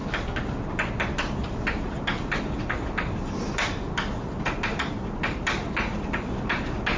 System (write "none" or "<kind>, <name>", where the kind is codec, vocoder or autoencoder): none